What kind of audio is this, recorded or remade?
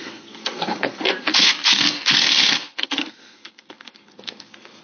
remade